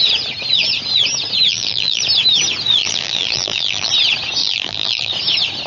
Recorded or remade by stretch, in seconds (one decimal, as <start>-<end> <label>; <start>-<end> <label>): 0.0-1.5 recorded; 1.5-2.0 remade; 2.0-2.8 recorded; 2.8-3.9 remade; 3.9-4.4 recorded; 4.4-5.1 remade; 5.1-5.7 recorded